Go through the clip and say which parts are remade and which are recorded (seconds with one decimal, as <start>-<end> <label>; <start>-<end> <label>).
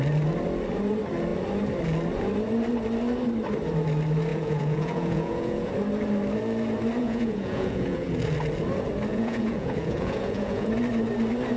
0.0-4.3 recorded; 4.3-5.7 remade; 5.7-7.0 recorded; 7.0-8.1 remade; 8.1-9.1 recorded; 9.1-10.7 remade; 10.7-11.6 recorded